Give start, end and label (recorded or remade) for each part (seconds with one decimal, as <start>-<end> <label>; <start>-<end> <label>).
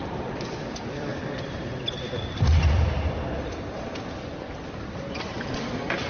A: 0.0-1.1 remade; 1.1-4.8 recorded; 4.8-6.1 remade